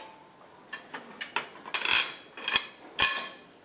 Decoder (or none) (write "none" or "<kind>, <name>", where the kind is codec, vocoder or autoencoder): none